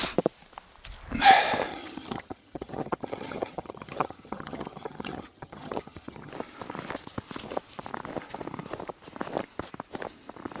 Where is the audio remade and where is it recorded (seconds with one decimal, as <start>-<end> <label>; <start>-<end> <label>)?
0.0-1.7 recorded; 1.7-6.3 remade; 6.3-10.6 recorded